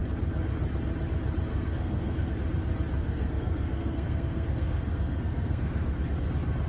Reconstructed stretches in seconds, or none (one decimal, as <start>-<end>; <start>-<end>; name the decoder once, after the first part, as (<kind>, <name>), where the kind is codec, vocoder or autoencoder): 1.5-2.3 (codec, SNAC); 3.0-6.0